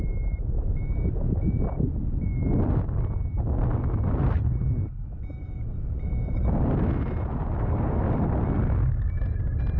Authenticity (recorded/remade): recorded